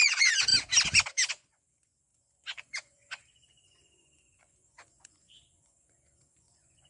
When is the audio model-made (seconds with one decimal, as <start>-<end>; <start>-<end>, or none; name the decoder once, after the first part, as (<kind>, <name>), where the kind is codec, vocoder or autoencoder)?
0.0-0.5 (vocoder, Vocos); 1.3-6.9